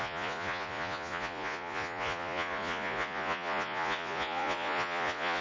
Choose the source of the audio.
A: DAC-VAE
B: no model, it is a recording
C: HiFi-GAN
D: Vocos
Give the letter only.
D